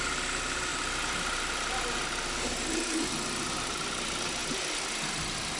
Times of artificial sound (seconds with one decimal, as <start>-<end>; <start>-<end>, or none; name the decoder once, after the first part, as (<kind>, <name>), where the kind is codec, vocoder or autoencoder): none